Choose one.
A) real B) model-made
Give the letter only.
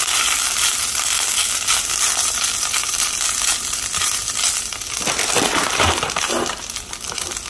A